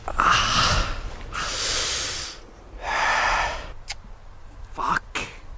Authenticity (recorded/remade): recorded